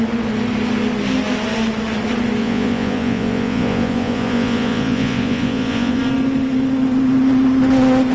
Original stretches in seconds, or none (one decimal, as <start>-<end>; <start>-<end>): 0.0-2.4; 6.0-8.1